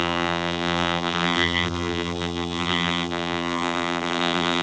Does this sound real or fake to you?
fake